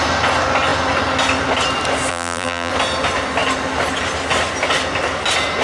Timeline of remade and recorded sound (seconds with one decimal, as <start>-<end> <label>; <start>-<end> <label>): 0.0-2.1 recorded; 2.1-2.7 remade; 2.7-5.6 recorded